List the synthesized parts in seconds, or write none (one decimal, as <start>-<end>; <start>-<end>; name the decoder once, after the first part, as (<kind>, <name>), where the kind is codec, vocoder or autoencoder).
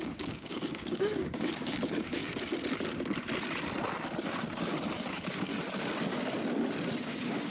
0.0-2.2 (codec, DAC); 5.1-5.5; 7.0-7.5